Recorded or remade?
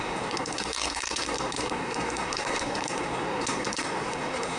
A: remade